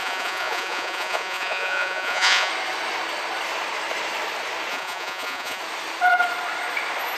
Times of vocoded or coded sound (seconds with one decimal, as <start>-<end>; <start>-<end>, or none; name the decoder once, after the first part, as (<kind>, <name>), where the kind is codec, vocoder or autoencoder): 0.0-2.5 (vocoder, Vocos); 4.7-5.6